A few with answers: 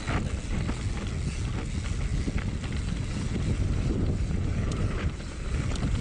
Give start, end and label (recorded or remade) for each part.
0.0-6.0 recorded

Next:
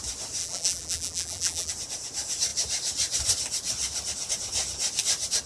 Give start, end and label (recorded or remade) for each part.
0.0-0.4 recorded; 0.4-1.7 remade; 1.7-5.5 recorded